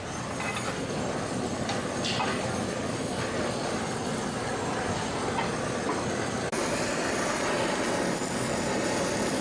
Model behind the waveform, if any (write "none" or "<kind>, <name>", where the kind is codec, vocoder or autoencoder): none